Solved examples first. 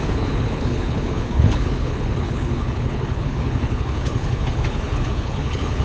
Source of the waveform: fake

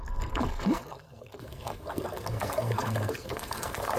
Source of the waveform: fake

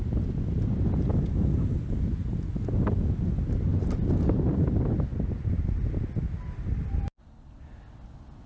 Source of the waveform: real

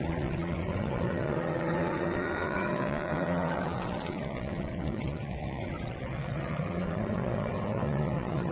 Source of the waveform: fake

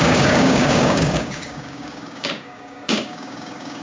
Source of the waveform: fake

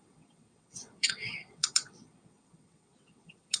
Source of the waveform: fake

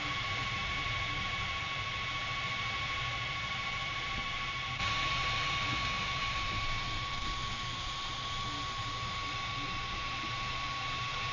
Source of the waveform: fake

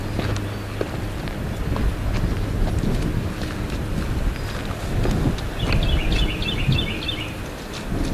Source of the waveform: real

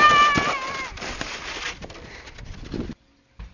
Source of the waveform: real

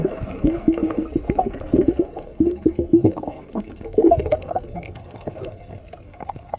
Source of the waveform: fake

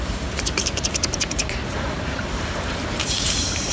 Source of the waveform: fake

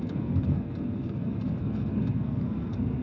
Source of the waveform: fake